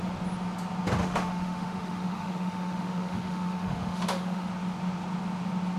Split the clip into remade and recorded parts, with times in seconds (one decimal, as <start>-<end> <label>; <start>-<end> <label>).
0.0-1.0 recorded; 1.0-4.5 remade; 4.5-5.8 recorded